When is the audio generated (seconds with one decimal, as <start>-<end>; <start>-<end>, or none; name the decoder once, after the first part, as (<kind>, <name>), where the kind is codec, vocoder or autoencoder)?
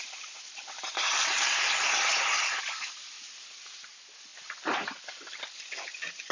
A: 0.0-3.8 (vocoder, BigVGAN v2)